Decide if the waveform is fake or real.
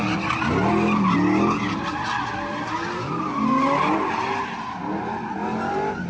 real